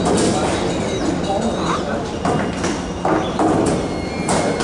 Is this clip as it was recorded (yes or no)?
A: yes